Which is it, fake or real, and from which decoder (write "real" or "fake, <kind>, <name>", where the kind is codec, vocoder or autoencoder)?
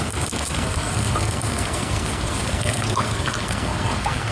fake, codec, SNAC